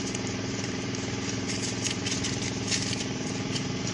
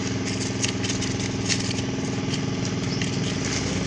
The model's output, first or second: first